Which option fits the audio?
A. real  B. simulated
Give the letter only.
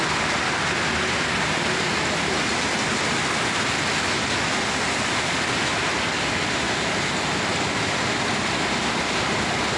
A